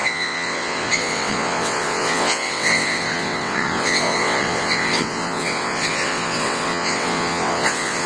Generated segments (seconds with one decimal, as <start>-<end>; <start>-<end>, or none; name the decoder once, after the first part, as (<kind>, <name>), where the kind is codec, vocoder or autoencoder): 0.0-8.1 (vocoder, WaveNeXt)